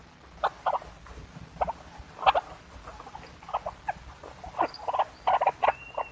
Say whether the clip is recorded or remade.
recorded